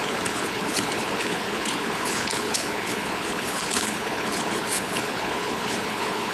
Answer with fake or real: fake